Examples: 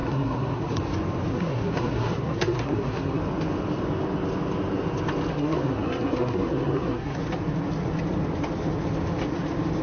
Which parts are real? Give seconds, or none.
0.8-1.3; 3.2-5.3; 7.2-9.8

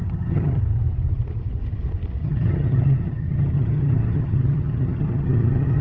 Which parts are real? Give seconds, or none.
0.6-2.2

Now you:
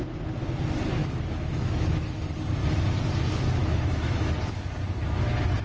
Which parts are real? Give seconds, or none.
0.0-1.0; 2.2-3.6; 4.4-5.6